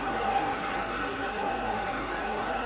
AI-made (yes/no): yes